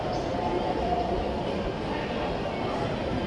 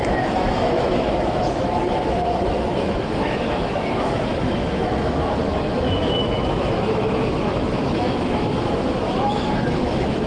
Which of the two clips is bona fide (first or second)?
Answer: first